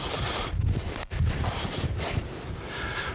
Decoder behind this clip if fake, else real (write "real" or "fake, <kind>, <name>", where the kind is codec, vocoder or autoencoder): real